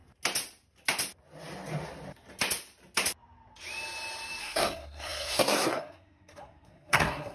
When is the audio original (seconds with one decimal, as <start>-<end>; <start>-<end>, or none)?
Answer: 0.0-4.4